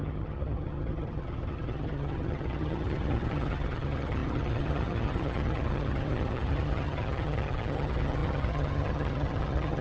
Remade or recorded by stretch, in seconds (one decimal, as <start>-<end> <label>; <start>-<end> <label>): 0.0-9.8 remade